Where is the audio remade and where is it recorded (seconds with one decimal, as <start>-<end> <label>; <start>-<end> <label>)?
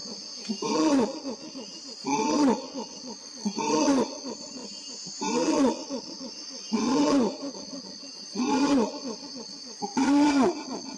0.0-0.7 recorded; 0.7-4.6 remade; 4.6-5.3 recorded; 5.3-11.0 remade